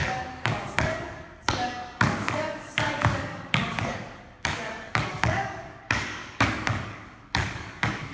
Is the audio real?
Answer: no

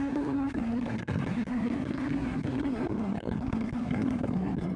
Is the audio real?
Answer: no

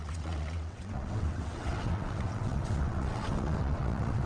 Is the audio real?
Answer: no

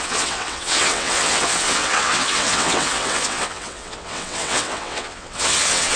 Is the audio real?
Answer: no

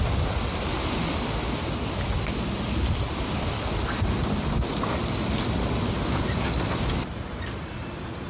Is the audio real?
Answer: yes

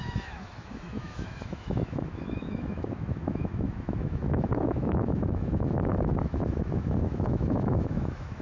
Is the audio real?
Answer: no